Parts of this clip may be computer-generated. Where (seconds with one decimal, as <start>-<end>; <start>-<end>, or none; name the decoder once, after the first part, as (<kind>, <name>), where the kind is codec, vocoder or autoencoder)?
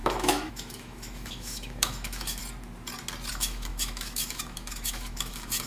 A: 0.0-2.4 (autoencoder, DAC-VAE); 3.3-5.7